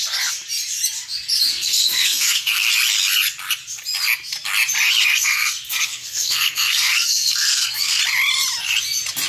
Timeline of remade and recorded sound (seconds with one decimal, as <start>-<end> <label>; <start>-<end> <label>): 0.0-1.5 recorded; 1.5-2.7 remade; 2.7-5.1 recorded; 5.1-8.0 remade; 8.0-9.3 recorded